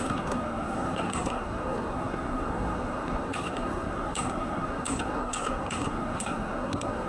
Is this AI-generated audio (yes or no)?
yes